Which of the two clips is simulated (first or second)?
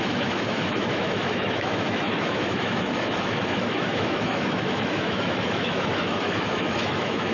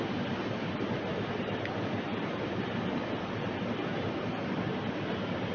first